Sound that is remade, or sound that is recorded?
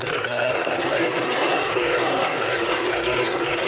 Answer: remade